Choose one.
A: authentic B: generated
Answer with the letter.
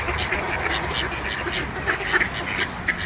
A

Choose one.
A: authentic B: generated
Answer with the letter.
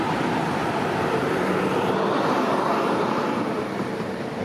B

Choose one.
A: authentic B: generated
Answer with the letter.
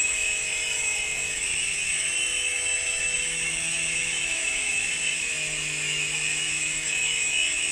B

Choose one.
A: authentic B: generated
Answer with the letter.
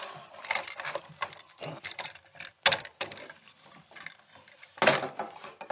A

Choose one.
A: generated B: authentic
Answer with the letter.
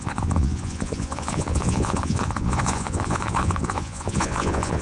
A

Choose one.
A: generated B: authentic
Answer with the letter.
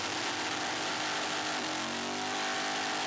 B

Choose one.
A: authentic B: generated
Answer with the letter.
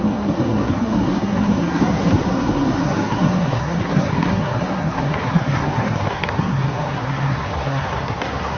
B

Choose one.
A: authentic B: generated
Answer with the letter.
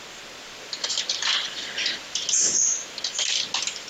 A